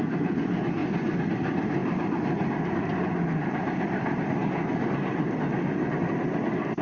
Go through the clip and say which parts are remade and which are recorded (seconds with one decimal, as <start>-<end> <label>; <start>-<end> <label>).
0.0-6.8 recorded